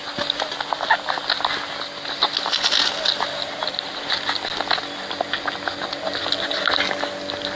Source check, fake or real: real